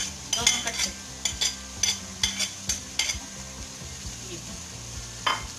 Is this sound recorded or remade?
recorded